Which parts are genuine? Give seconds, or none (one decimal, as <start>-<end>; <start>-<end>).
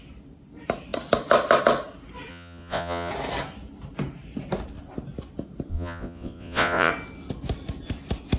0.0-2.3; 3.1-5.7; 6.9-8.4